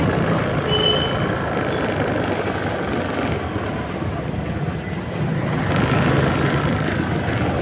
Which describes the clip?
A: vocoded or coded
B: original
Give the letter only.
B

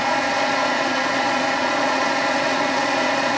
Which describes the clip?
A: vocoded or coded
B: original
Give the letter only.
A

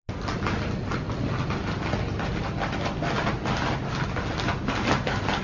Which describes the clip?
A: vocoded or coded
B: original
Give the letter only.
B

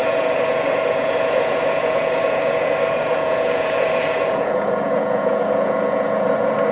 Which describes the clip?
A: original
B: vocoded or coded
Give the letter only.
B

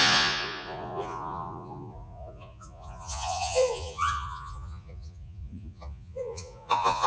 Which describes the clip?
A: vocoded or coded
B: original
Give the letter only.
A